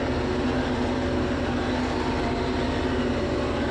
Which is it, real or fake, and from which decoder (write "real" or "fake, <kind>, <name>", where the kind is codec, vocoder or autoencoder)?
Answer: real